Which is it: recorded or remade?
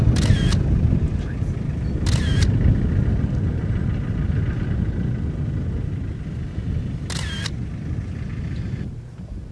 recorded